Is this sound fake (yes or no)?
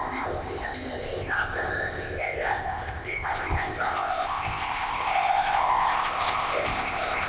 yes